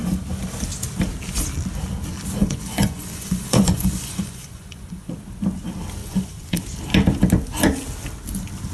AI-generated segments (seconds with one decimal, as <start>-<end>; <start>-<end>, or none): 2.4-5.1; 6.0-6.6